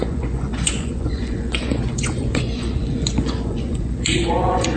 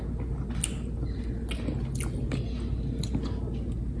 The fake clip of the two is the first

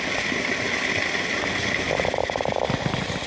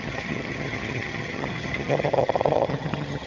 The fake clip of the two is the second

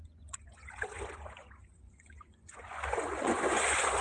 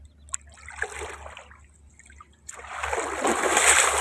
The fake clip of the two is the first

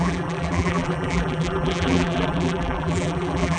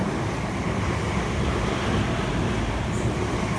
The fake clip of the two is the first